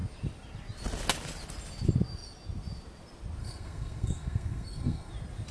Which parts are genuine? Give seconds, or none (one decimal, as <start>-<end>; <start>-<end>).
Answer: 0.0-3.4; 5.1-5.5